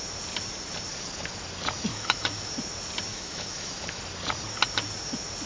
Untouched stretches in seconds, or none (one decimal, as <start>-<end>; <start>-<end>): 0.0-1.9; 2.5-3.1; 4.0-5.5